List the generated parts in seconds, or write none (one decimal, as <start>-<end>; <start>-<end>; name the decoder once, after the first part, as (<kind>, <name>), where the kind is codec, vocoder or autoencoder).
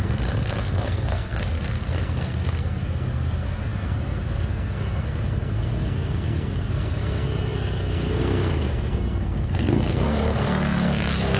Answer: 0.0-11.4 (codec, SNAC)